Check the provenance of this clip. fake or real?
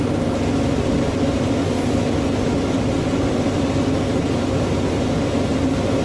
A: real